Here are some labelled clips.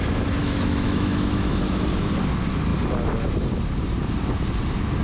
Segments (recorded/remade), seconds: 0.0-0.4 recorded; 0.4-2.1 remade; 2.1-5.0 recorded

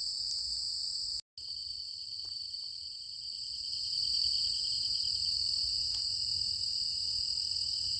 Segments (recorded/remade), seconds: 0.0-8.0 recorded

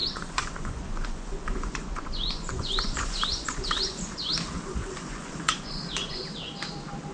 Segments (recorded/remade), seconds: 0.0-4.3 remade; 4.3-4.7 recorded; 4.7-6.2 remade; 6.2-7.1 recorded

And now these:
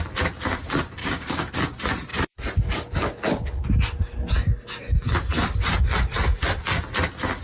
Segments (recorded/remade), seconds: 0.0-1.0 recorded; 1.0-1.5 remade; 1.5-7.4 recorded

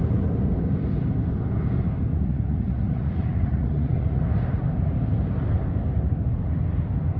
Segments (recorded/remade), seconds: 0.0-2.1 recorded; 2.1-4.2 remade; 4.2-7.2 recorded